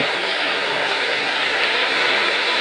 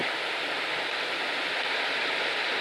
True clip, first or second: second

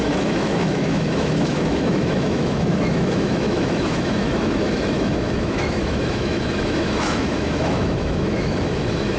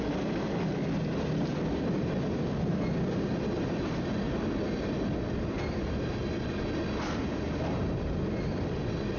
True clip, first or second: second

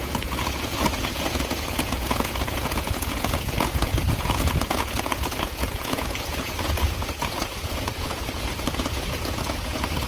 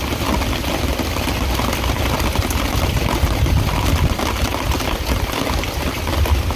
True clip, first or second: second